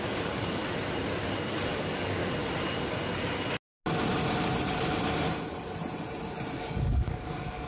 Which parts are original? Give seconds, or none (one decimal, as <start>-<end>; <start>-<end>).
0.6-1.4; 2.2-6.6